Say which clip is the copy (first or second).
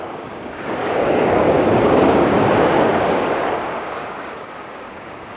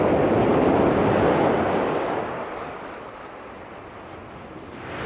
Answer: first